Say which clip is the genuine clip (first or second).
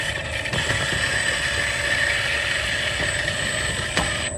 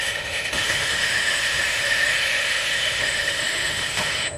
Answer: first